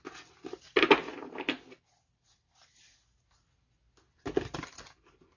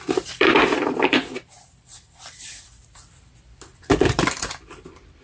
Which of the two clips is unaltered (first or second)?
first